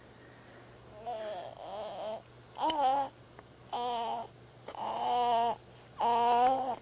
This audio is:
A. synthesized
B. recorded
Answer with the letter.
B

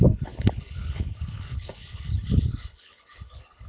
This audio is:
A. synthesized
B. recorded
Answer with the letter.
A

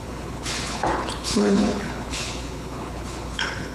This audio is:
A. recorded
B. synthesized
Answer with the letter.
B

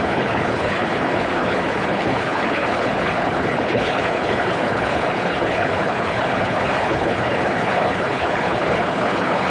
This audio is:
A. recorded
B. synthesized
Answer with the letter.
B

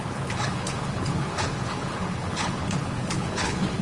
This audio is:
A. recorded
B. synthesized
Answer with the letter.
B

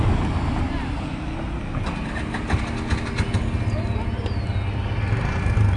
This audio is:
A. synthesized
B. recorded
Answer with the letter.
B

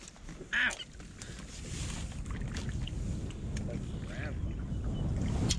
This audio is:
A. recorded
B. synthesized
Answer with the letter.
A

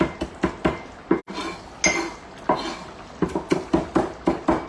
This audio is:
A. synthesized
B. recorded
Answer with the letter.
B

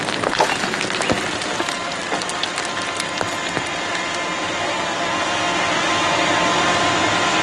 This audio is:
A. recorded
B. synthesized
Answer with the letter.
A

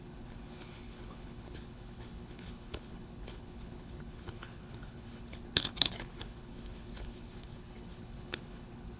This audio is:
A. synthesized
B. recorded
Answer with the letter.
A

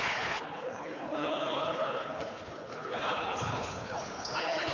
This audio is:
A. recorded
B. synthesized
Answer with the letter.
B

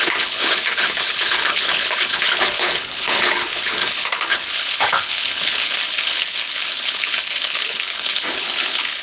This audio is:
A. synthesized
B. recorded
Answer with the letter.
A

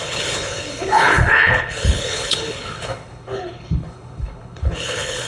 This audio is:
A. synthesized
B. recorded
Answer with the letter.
A